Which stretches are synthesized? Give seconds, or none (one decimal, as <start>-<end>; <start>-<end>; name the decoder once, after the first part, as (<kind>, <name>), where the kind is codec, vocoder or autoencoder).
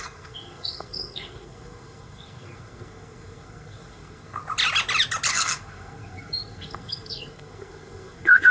0.0-4.4 (codec, SNAC); 5.3-8.5